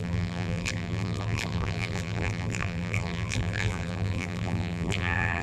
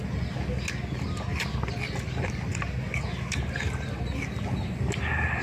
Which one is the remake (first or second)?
first